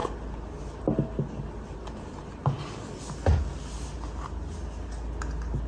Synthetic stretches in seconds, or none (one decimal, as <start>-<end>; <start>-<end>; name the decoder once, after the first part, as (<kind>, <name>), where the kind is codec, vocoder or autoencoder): none